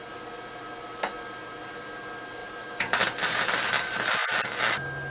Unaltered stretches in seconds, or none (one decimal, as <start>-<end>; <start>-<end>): 0.0-2.4; 3.7-5.1